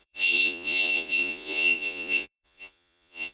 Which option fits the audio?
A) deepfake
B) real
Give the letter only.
A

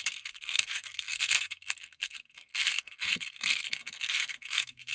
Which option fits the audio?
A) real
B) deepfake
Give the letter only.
B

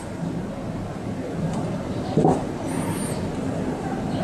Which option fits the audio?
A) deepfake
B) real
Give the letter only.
B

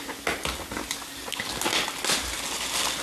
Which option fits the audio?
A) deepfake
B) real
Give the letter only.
B